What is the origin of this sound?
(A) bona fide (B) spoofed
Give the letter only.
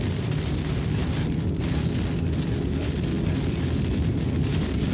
A